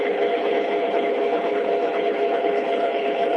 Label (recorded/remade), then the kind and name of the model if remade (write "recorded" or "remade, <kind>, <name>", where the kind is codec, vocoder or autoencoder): remade, codec, HILCodec